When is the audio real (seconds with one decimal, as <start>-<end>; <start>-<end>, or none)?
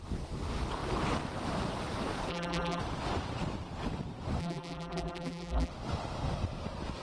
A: 0.0-2.3; 2.8-4.4; 5.7-7.0